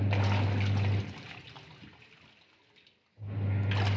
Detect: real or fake real